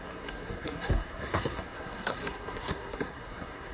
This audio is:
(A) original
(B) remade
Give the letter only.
B